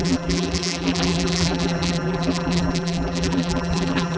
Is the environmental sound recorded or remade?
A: remade